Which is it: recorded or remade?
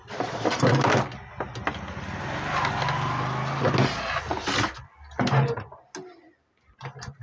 recorded